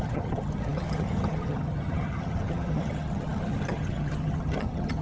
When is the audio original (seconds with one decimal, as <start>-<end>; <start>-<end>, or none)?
none